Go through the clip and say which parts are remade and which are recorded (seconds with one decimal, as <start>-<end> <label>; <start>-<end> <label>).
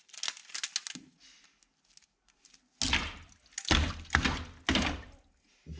0.0-5.8 recorded